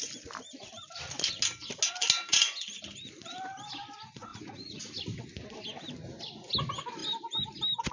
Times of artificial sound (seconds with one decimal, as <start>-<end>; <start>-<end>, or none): 4.3-4.8